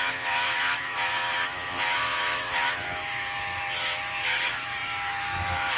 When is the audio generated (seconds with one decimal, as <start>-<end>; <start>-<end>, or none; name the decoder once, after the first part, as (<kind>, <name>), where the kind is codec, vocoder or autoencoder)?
0.0-5.8 (autoencoder, DAC-VAE)